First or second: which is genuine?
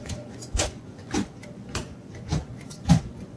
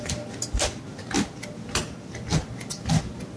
second